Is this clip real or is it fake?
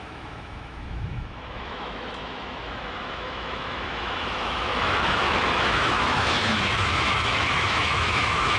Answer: fake